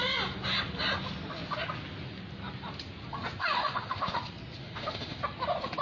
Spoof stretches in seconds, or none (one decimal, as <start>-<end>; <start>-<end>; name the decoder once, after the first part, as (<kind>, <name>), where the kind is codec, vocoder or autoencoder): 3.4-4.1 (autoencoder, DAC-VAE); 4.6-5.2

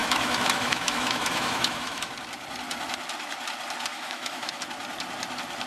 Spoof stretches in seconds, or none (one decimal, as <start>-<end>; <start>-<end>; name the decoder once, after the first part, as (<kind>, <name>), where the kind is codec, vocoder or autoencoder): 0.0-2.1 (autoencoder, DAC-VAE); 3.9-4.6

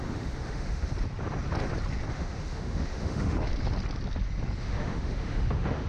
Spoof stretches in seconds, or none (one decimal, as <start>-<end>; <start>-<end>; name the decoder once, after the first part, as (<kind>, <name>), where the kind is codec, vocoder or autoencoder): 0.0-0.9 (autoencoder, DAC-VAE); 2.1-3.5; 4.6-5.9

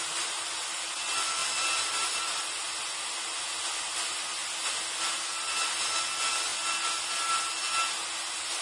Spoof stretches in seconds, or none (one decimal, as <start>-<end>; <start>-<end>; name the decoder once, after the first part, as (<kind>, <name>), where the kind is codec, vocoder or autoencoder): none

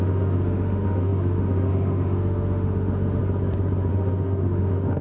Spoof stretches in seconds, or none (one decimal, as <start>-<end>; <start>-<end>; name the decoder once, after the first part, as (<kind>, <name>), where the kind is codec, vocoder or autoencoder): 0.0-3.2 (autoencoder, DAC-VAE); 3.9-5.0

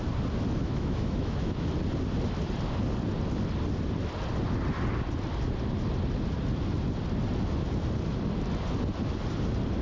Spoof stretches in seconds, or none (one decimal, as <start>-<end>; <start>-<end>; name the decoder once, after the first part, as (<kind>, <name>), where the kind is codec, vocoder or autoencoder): 0.6-1.7 (autoencoder, DAC-VAE)

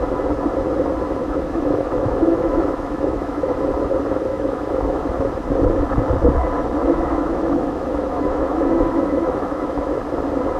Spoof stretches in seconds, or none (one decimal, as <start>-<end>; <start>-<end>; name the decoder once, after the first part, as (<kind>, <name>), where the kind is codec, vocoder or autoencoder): 1.2-3.6 (autoencoder, DAC-VAE); 4.3-5.0; 6.8-10.0